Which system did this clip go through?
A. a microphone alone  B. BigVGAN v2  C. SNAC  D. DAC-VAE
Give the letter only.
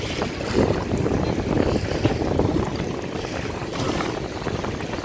A